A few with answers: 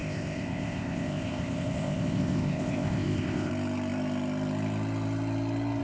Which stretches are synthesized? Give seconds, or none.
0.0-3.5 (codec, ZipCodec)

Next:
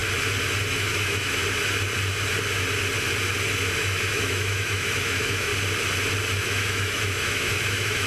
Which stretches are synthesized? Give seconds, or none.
0.7-1.4 (autoencoder, DAC-VAE); 3.8-5.5; 6.4-8.1